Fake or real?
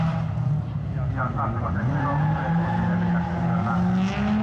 real